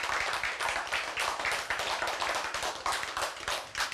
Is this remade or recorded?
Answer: remade